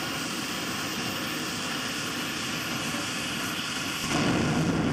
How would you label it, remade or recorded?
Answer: recorded